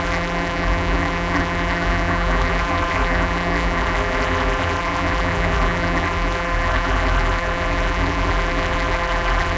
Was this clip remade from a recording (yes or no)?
yes